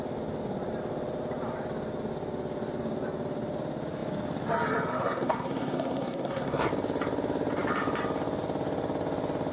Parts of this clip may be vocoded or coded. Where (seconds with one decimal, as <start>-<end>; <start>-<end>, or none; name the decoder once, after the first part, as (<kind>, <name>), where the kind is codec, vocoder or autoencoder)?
4.9-6.7 (codec, SNAC)